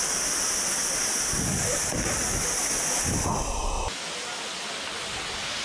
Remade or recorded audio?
recorded